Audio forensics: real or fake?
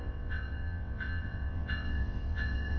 fake